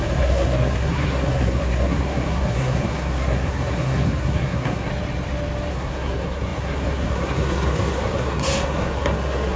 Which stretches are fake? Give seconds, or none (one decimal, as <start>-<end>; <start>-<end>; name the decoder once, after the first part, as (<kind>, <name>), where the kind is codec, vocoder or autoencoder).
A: 0.0-4.9 (codec, SNAC); 5.7-9.6